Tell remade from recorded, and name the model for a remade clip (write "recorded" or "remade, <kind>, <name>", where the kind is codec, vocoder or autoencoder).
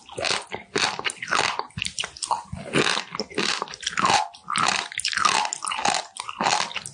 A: recorded